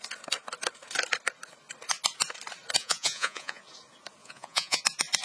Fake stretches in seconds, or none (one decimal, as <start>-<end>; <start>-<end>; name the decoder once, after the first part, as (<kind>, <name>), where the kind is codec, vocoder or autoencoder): 2.8-3.6 (vocoder, Vocos); 4.2-4.8